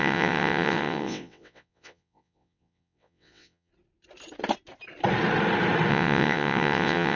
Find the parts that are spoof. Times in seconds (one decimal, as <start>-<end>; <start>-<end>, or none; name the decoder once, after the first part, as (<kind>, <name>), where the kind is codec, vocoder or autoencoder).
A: 0.0-3.7 (vocoder, WaveNeXt); 5.9-7.2